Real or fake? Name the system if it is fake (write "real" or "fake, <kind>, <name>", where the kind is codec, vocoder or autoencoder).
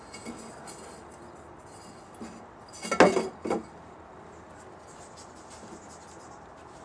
real